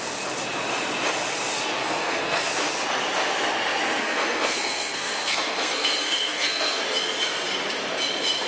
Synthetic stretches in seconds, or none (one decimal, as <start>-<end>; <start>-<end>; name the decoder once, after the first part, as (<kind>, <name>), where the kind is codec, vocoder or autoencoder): 1.8-2.5 (codec, SNAC); 4.0-6.8